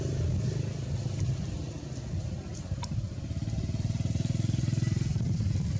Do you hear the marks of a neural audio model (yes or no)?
no